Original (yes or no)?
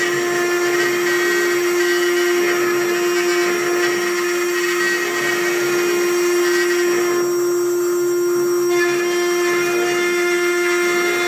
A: yes